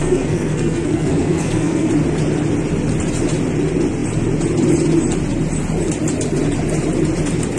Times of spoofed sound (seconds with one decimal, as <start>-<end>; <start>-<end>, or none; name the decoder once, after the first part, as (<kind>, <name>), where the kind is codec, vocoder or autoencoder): 0.0-1.9 (codec, SNAC)